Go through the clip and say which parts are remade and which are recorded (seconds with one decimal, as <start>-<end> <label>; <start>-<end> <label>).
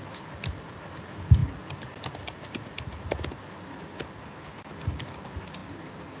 0.0-6.2 recorded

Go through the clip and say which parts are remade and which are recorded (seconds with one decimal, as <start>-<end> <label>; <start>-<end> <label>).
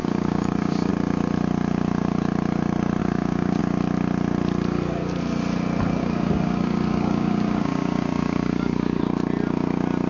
0.0-0.9 remade; 0.9-3.0 recorded; 3.0-3.6 remade; 3.6-6.0 recorded; 6.0-9.0 remade; 9.0-10.1 recorded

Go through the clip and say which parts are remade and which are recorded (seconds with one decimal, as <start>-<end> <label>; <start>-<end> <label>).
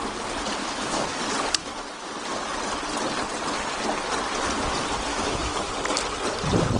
0.0-0.6 recorded; 0.6-1.2 remade; 1.2-1.6 recorded; 1.6-2.2 remade; 2.2-5.1 recorded; 5.1-5.7 remade; 5.7-6.8 recorded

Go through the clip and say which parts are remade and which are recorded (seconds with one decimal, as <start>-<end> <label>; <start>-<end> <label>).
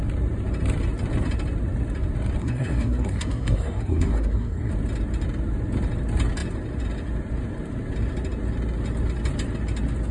0.0-2.4 recorded; 2.4-4.7 remade; 4.7-10.1 recorded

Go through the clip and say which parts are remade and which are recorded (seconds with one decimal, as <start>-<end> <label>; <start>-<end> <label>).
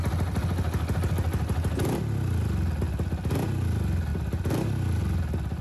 0.0-5.6 recorded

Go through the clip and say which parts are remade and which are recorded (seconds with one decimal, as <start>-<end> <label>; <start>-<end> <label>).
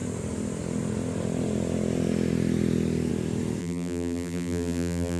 0.0-3.6 recorded; 3.6-5.2 remade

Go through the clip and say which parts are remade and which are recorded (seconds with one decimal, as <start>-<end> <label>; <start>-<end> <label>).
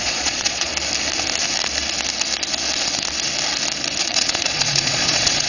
0.0-0.7 remade; 0.7-4.0 recorded; 4.0-5.5 remade